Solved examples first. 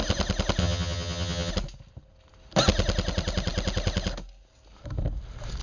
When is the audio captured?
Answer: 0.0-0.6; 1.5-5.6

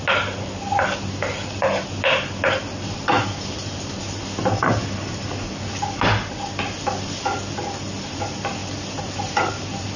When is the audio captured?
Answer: 0.0-10.0

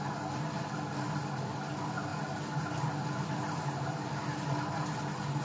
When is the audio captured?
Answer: 0.0-5.4

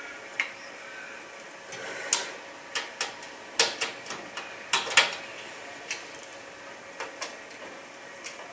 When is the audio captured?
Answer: 0.0-8.5

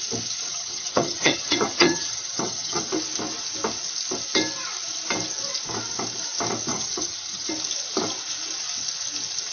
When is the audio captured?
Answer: 0.0-0.5; 2.8-6.7; 7.5-9.5

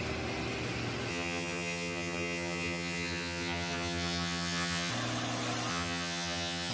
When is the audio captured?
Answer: 0.0-1.1; 4.9-5.7

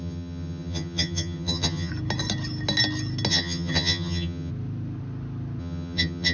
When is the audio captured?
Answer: 1.9-3.3; 4.5-5.6